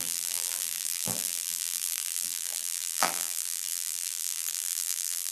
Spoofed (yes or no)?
yes